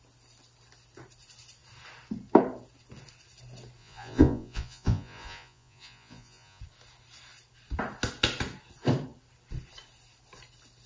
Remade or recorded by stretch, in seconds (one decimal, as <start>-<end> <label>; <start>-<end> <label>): 0.0-3.8 recorded; 3.8-6.6 remade; 6.6-10.9 recorded